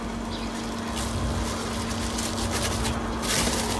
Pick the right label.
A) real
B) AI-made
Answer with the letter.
A